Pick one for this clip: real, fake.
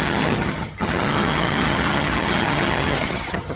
fake